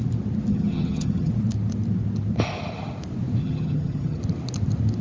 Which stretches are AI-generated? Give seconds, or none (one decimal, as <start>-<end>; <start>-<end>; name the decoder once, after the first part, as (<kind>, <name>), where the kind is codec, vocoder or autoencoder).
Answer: 0.5-1.3 (vocoder, HiFi-GAN); 3.4-4.2